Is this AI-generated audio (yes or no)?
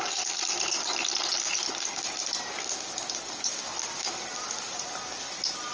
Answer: no